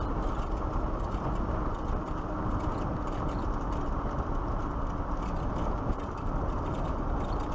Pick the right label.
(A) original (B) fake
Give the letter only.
B